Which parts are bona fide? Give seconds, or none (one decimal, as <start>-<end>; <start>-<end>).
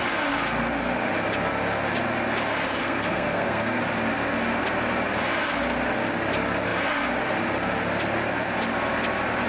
0.0-2.8; 3.8-9.5